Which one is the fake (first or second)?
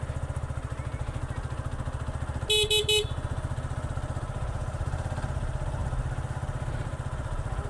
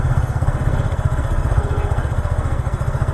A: second